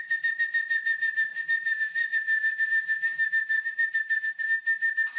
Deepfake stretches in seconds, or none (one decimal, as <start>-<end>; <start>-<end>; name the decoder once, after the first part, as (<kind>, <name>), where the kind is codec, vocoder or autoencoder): 1.3-4.4 (vocoder, BigVGAN v2)